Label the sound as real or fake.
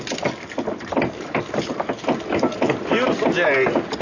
real